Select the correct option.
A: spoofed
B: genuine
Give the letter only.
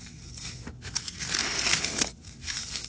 A